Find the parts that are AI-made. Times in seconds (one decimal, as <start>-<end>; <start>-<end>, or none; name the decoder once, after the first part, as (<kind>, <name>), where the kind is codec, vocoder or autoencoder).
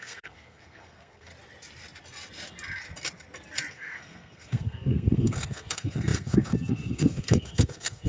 0.0-1.3 (codec, SNAC); 3.7-8.1